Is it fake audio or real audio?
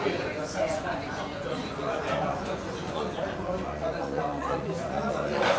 fake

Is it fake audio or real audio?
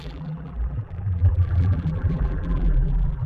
fake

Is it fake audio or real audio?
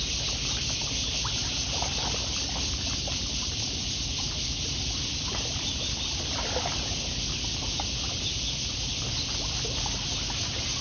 real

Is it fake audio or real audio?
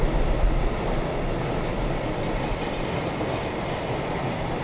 real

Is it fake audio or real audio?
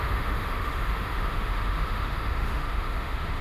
fake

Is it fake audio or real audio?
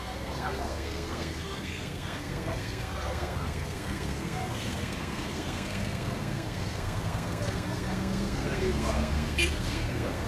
fake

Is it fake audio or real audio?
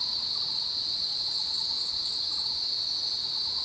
real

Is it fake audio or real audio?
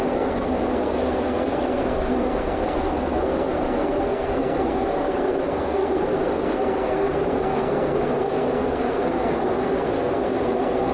fake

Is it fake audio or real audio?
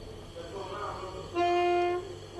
real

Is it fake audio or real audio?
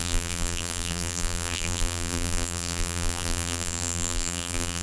fake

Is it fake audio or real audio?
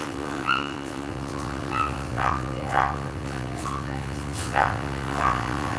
fake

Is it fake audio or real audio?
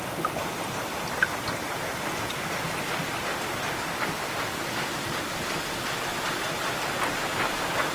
real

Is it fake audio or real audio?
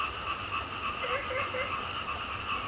real